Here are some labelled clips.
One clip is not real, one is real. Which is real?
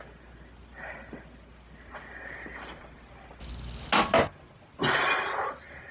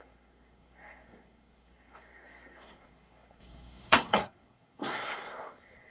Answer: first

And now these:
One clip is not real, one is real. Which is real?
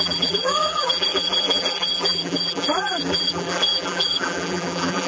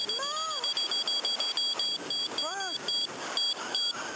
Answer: second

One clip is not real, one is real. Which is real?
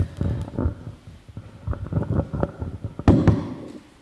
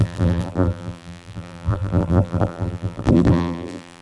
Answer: first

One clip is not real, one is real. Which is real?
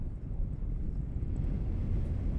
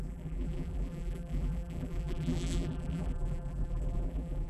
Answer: first